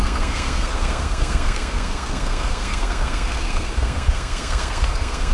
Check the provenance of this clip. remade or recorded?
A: remade